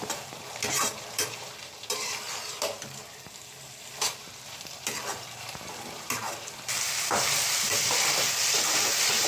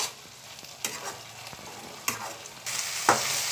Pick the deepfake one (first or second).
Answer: first